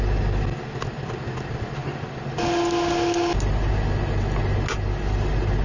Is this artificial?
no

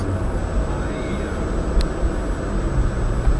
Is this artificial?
no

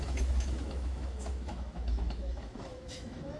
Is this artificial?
yes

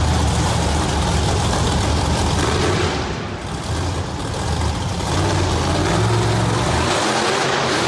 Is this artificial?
no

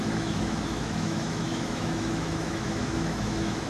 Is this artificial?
yes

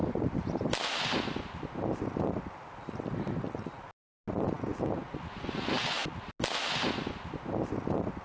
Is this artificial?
no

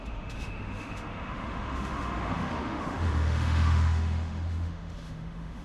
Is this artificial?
yes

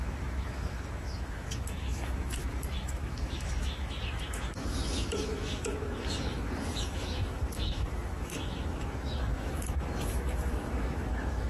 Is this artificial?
yes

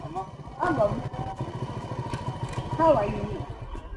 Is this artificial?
no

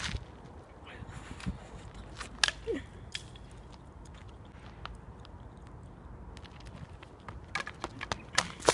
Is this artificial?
no